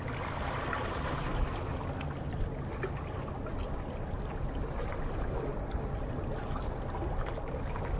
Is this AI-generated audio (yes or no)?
no